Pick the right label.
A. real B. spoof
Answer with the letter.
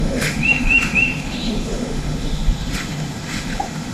B